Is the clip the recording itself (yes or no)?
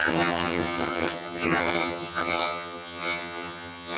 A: no